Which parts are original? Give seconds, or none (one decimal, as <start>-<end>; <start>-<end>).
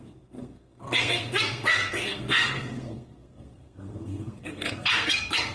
none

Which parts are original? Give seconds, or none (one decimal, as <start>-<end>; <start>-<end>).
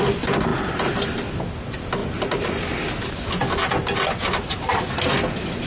0.0-2.0; 2.6-5.7